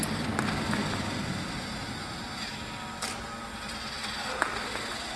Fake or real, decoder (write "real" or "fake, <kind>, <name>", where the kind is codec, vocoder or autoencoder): real